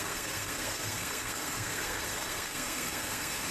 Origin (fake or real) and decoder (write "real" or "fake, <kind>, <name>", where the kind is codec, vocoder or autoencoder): fake, codec, SNAC